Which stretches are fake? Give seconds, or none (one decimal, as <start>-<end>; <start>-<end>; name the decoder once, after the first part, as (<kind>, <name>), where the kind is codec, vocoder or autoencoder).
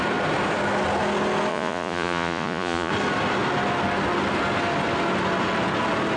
1.5-2.9 (vocoder, Vocos)